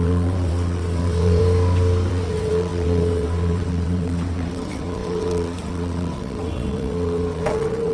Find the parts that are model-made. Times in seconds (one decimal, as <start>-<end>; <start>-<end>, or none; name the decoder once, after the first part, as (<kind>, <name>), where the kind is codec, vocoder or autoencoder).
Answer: 0.0-1.4 (vocoder, WaveNeXt); 2.1-7.9